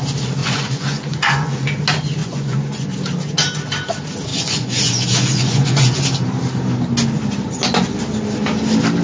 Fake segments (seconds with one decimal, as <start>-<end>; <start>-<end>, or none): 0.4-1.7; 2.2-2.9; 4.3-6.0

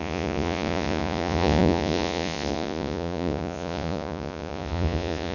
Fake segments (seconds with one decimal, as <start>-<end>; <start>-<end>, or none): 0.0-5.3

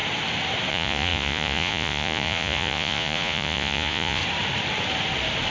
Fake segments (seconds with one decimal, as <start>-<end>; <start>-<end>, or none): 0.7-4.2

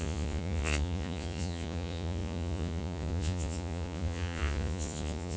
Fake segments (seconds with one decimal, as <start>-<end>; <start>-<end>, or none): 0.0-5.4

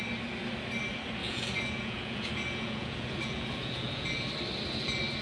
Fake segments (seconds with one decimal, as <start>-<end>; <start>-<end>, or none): 1.2-4.3

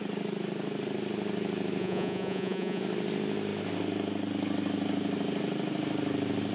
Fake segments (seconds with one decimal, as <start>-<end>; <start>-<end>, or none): 1.8-2.8